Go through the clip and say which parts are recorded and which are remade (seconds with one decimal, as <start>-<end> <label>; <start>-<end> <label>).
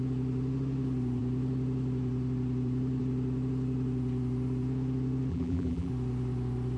0.0-5.3 recorded; 5.3-5.9 remade; 5.9-6.8 recorded